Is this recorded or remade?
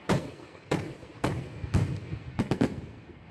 remade